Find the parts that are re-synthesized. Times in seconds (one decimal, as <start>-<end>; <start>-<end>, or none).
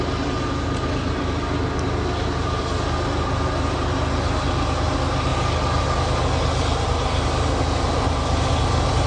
none